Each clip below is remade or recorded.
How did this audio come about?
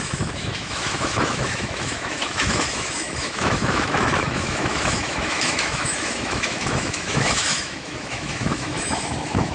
remade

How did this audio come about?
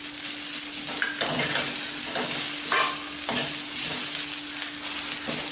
recorded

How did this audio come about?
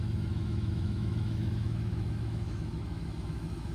remade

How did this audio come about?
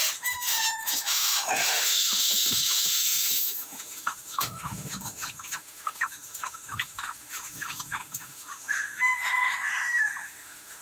remade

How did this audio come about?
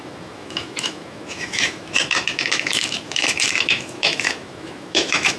remade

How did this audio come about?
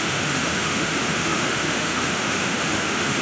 remade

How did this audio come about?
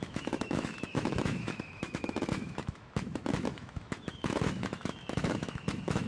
remade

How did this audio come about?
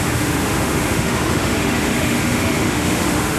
remade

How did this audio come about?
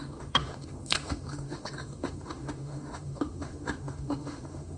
remade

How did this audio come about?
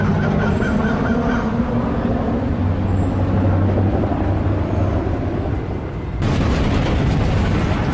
recorded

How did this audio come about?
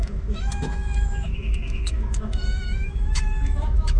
remade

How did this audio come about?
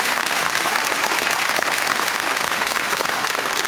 remade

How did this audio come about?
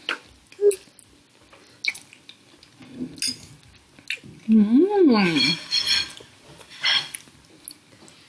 recorded